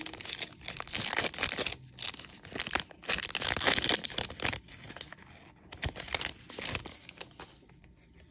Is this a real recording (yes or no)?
yes